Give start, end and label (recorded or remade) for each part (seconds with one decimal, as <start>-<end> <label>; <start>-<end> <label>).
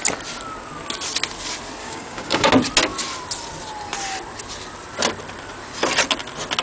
0.0-1.8 recorded; 1.8-2.5 remade; 2.5-6.6 recorded